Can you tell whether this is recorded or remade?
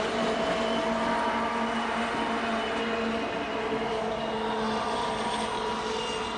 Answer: recorded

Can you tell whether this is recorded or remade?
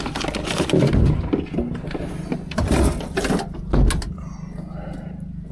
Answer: recorded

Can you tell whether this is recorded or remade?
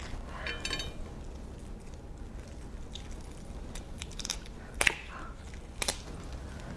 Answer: recorded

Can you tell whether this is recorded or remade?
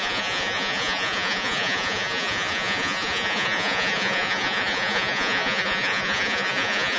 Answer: remade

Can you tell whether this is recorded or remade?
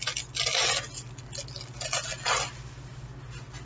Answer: recorded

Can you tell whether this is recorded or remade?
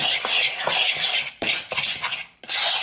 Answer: recorded